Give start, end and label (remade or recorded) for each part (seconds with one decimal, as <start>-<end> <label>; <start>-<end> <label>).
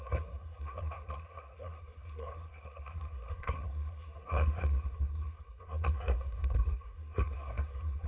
0.0-8.1 remade